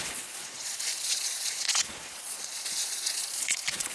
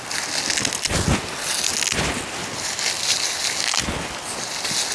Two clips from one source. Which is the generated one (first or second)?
first